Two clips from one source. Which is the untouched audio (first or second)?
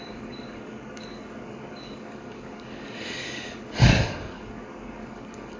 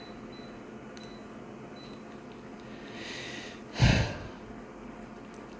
second